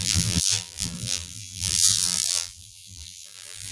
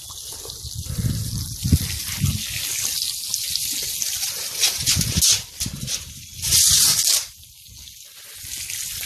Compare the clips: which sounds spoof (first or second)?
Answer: first